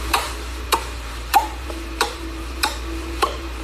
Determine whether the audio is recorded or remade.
remade